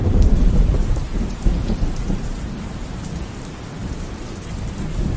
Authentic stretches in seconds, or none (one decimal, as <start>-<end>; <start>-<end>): 3.0-5.2